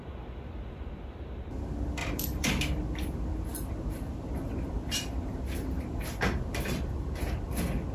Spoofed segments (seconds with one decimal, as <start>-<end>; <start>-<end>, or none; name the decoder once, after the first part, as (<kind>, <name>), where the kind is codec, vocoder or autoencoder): 2.0-2.5 (vocoder, BigVGAN v2)